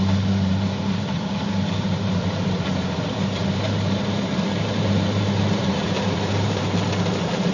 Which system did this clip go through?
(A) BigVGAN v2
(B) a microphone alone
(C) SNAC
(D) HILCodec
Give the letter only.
A